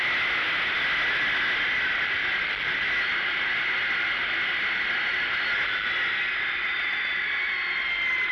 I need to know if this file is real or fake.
real